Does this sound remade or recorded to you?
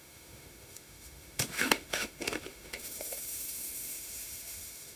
remade